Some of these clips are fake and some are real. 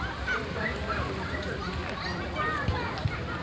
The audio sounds real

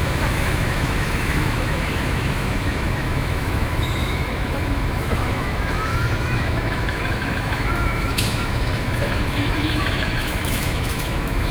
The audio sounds fake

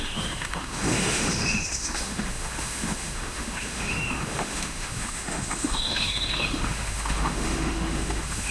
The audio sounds fake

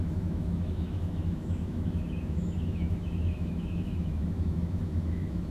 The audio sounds fake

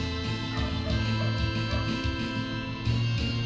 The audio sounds real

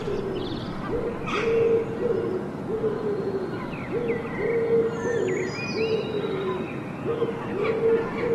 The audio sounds real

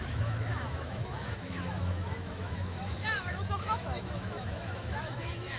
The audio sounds fake